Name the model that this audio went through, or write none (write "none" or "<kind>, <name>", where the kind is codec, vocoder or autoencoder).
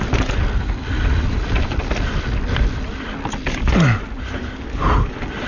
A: none